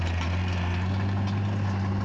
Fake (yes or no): no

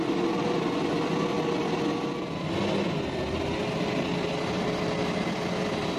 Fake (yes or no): no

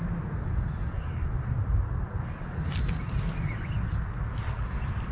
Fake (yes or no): no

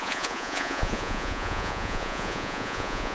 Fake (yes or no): yes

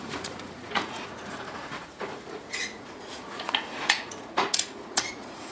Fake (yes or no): yes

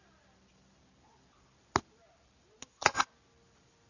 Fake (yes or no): no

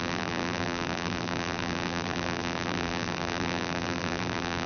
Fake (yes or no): yes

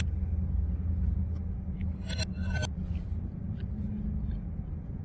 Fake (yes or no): no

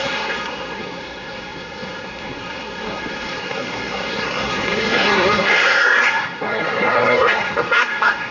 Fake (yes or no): yes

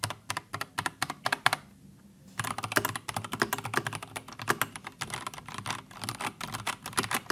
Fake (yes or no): no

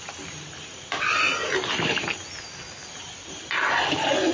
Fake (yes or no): no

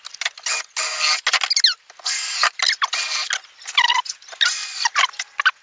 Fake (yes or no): no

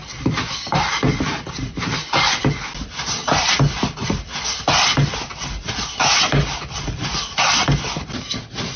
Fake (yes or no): no